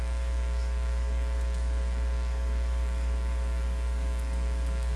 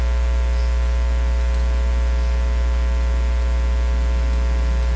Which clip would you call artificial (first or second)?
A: first